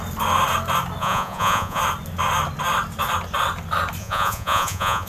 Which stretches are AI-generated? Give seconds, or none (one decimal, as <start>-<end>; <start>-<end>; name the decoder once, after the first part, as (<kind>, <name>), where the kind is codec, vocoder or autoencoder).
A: 1.0-1.8 (vocoder, Vocos); 4.0-5.1